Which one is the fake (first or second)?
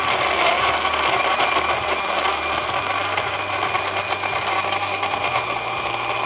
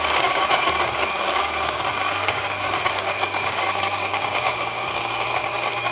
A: second